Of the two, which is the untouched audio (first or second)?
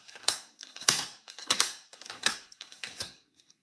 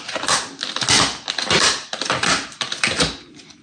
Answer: second